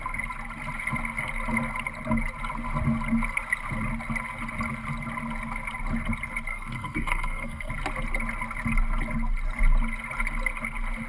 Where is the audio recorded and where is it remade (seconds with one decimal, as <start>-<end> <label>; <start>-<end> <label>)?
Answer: 0.0-6.5 recorded; 6.5-7.7 remade; 7.7-11.1 recorded